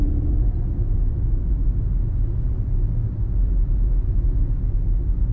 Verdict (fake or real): real